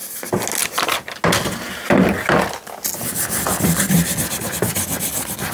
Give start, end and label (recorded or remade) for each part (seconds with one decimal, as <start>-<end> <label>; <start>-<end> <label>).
0.0-5.5 recorded